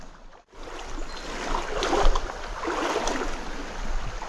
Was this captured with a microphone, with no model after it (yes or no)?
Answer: yes